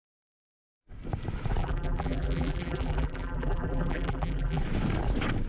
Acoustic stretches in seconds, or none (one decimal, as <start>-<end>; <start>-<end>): 0.0-1.6; 4.6-5.5